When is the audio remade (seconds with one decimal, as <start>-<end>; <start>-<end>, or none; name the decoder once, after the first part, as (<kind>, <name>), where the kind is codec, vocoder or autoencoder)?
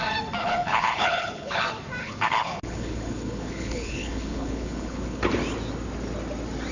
0.4-1.6 (codec, HILCodec); 2.0-5.2